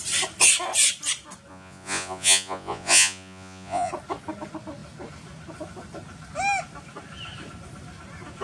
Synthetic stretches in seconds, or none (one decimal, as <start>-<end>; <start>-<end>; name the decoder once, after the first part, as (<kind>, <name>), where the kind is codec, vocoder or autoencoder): 1.5-3.9 (vocoder, Vocos)